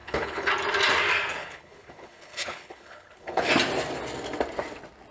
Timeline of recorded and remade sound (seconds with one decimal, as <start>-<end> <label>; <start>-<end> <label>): 0.0-0.5 remade; 0.5-1.4 recorded; 1.4-3.5 remade; 3.5-5.1 recorded